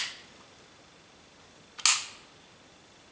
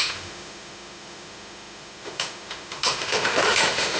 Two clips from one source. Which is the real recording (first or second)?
first